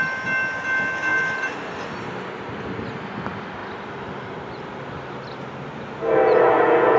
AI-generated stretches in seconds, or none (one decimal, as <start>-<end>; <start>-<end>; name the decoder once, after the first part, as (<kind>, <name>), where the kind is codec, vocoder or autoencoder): none